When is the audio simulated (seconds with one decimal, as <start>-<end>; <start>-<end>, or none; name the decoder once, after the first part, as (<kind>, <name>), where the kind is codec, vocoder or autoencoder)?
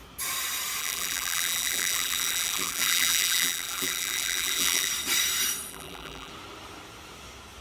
0.8-4.9 (vocoder, BigVGAN v2); 5.7-6.3